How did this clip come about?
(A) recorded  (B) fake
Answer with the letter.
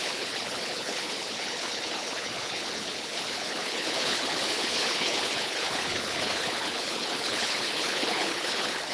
B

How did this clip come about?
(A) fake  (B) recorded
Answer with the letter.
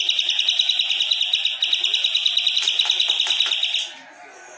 B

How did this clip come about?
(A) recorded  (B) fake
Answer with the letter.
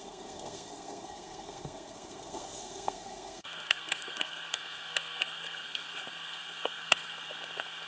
B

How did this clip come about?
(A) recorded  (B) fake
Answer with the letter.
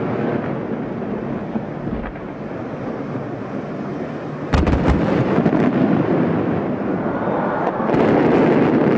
A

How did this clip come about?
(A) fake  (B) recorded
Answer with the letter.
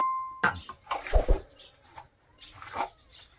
B